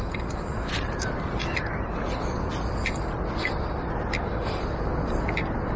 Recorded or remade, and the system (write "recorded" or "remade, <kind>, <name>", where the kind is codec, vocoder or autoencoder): recorded